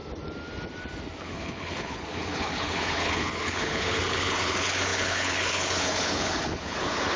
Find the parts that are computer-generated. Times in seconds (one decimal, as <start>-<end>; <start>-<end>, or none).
1.2-7.2